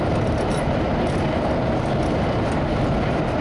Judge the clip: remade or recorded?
recorded